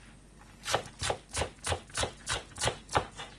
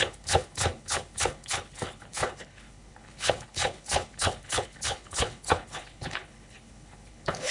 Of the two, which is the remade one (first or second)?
second